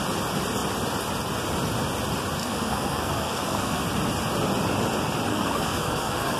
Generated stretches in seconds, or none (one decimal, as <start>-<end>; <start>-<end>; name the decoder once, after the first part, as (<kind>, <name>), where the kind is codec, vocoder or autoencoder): 2.4-3.8 (codec, SNAC); 5.3-6.4